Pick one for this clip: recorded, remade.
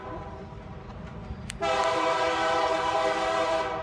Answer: remade